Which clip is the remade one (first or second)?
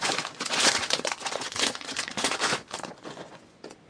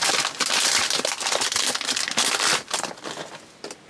first